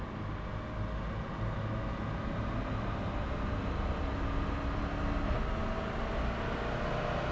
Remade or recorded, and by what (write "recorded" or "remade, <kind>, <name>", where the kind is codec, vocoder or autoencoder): recorded